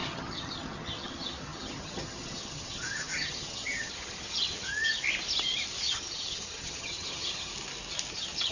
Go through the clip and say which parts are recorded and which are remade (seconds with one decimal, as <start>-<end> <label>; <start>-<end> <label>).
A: 0.0-4.9 remade; 4.9-5.8 recorded; 5.8-7.5 remade; 7.5-8.1 recorded; 8.1-8.5 remade